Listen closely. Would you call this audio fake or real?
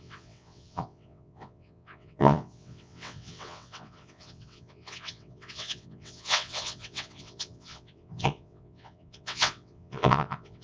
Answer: fake